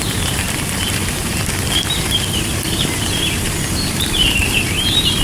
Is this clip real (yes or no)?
no